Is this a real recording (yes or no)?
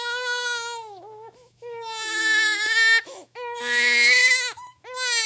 no